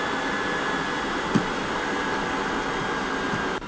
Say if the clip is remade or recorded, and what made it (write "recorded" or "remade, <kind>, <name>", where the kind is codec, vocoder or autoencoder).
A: recorded